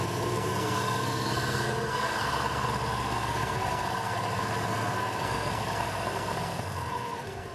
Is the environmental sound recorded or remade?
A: remade